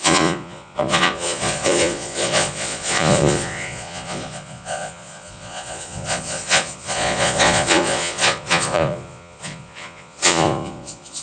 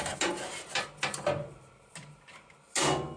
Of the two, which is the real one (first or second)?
second